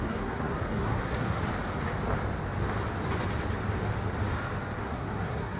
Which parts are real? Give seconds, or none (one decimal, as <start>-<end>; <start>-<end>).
1.4-4.8